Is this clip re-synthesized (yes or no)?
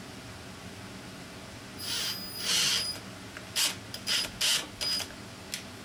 no